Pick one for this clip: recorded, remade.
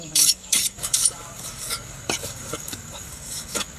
remade